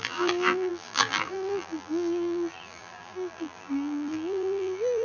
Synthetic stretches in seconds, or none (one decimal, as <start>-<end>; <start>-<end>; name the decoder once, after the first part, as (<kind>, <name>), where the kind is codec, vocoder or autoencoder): 0.0-5.0 (vocoder, BigVGAN v2)